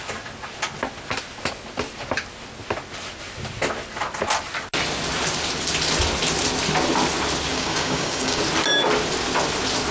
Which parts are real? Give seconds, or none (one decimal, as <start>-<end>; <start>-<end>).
0.0-7.5; 8.4-9.9